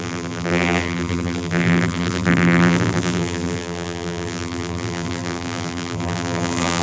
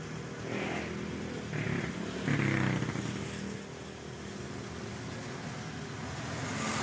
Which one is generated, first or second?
first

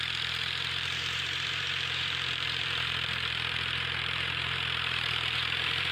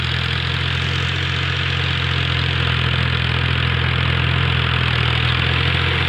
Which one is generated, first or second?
first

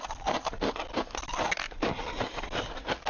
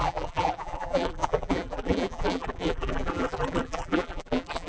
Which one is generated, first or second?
second